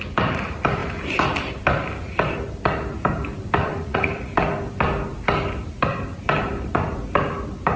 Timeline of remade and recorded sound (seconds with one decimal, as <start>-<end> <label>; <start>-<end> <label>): 0.0-3.6 recorded; 3.6-4.3 remade; 4.3-7.8 recorded